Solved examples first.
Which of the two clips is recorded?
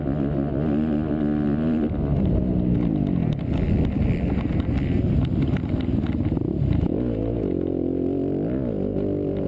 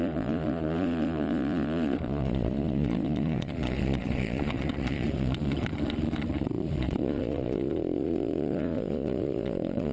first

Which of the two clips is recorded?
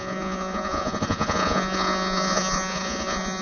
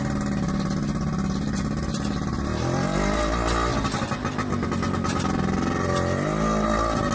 second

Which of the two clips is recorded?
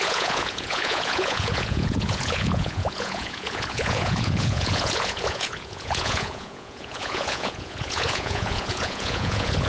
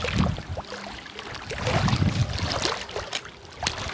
second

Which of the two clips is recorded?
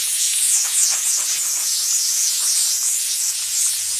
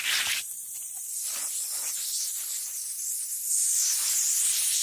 second